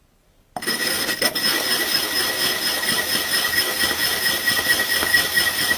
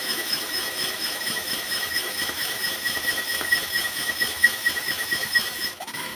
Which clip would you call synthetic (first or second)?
second